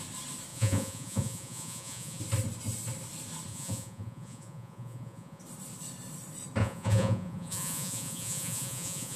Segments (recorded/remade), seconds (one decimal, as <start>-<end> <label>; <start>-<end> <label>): 0.0-0.5 recorded; 0.5-2.2 remade; 2.2-3.5 recorded; 3.5-5.4 remade; 5.4-6.6 recorded; 6.6-9.2 remade